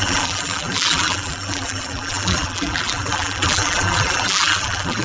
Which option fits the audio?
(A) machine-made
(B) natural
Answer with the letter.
A